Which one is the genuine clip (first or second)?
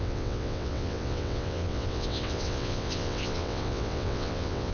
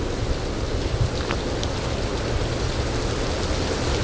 second